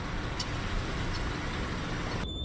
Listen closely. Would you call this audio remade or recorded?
recorded